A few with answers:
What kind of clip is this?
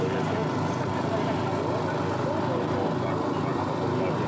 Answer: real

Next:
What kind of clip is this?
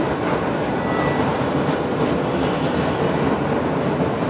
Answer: real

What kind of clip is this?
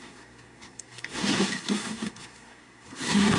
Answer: fake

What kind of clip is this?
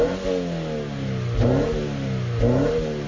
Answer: real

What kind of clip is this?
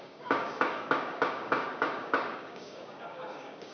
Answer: fake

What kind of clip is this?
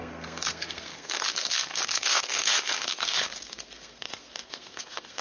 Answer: fake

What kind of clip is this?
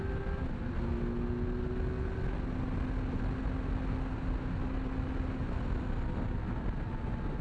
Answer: real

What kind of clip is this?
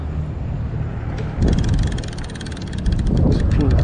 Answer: real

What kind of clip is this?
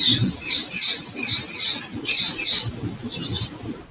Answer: real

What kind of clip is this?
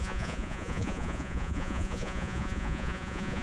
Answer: fake